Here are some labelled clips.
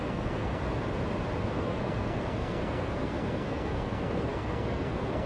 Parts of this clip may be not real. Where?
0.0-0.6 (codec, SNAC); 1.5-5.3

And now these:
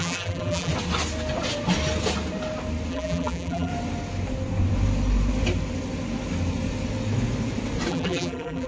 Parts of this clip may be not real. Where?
0.0-0.7 (vocoder, BigVGAN v2); 2.9-3.7; 7.9-8.7